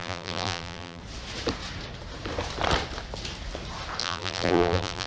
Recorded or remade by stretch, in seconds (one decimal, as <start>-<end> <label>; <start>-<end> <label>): 0.0-1.0 remade; 1.0-4.0 recorded; 4.0-5.1 remade